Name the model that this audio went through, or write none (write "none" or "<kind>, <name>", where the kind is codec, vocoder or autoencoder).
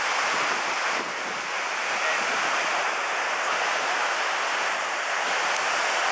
none